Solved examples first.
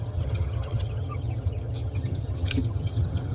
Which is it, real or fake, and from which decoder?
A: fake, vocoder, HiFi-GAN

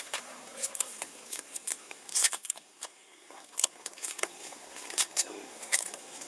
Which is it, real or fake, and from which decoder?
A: fake, codec, SNAC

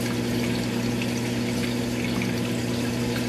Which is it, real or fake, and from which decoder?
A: real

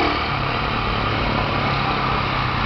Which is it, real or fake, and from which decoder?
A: real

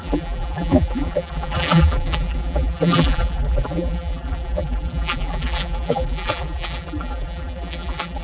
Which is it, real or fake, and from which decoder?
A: fake, vocoder, BigVGAN v2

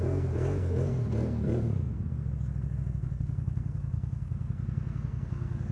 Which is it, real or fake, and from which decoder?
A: fake, codec, SNAC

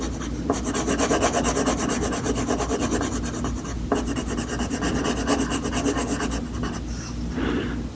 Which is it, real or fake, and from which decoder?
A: real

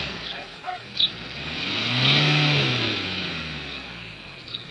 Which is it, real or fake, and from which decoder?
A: fake, codec, SNAC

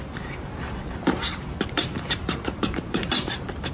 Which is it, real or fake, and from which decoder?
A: fake, vocoder, BigVGAN v2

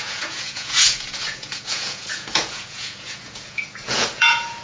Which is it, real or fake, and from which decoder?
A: fake, vocoder, Vocos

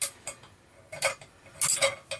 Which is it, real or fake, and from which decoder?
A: real